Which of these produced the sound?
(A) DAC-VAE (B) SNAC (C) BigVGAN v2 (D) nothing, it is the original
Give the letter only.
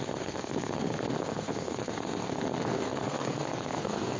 B